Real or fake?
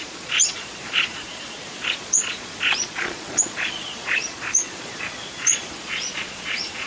fake